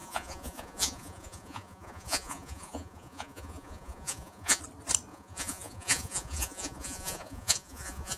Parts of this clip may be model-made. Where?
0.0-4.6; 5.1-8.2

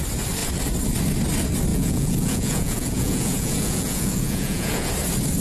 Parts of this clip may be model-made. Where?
1.7-4.9

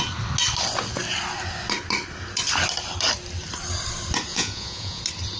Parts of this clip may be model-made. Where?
4.3-5.0

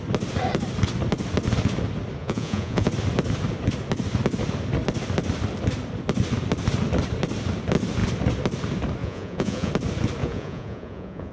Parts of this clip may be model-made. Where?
2.2-2.9; 9.0-9.7; 10.2-11.3

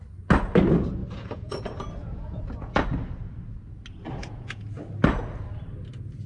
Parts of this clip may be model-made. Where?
1.0-1.6; 2.0-2.8; 4.2-4.8

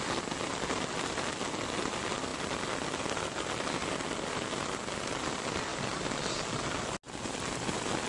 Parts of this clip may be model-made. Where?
none

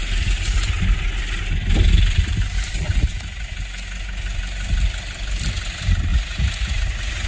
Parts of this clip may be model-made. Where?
2.9-3.5; 6.1-7.3

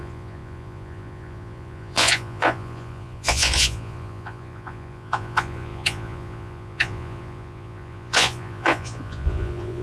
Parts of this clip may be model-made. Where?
0.0-9.8